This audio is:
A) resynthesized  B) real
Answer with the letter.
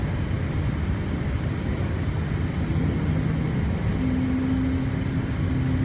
B